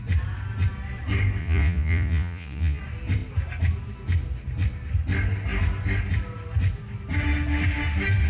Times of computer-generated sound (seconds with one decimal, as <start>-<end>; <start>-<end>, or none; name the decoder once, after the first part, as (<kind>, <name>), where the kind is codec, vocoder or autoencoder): 1.4-2.8 (vocoder, Vocos)